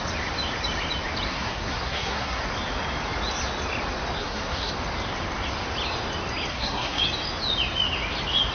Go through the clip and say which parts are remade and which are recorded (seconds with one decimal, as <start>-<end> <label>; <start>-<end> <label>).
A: 0.0-1.3 recorded; 1.3-2.4 remade; 2.4-4.2 recorded; 4.2-4.7 remade; 4.7-6.5 recorded; 6.5-7.0 remade; 7.0-8.5 recorded